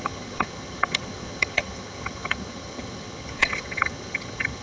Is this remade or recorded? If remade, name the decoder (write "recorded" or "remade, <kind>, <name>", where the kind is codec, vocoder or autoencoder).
remade, vocoder, HiFi-GAN